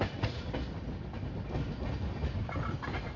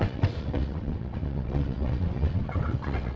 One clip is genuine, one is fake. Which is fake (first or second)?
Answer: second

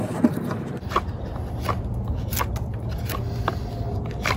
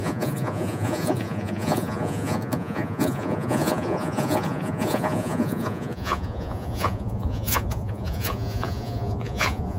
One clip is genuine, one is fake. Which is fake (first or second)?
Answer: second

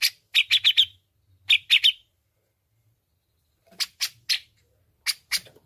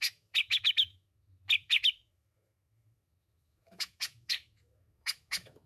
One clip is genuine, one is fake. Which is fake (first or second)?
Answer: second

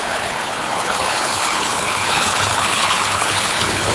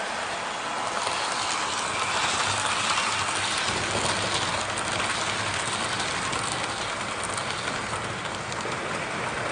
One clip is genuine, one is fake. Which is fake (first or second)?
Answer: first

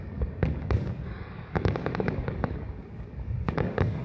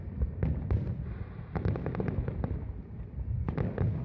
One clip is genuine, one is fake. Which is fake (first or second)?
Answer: first